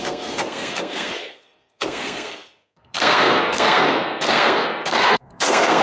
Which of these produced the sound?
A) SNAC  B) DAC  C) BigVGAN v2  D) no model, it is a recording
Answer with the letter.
A